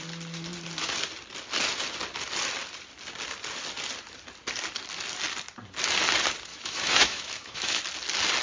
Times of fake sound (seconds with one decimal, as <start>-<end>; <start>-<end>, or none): 6.5-7.8